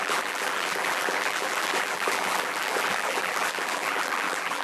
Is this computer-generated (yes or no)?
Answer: yes